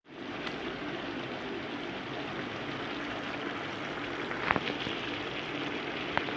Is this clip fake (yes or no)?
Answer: no